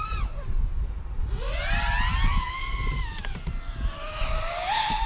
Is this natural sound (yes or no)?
yes